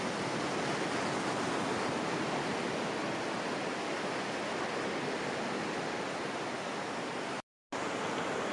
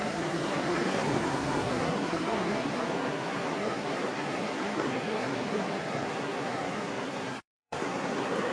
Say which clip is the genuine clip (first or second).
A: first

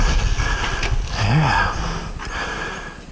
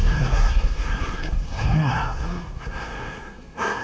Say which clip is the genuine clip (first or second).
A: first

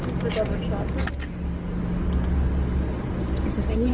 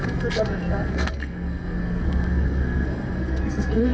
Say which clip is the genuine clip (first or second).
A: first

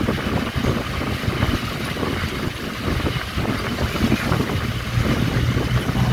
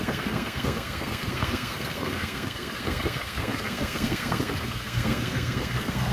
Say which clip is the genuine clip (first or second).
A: first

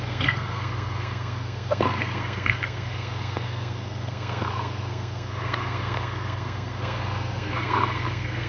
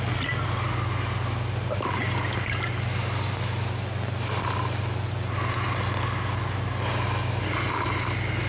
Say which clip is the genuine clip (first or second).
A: second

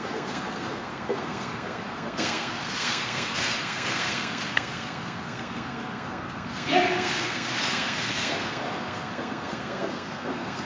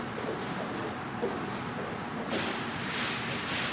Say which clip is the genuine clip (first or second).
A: second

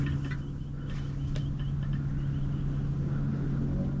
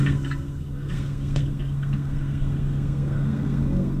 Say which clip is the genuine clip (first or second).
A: first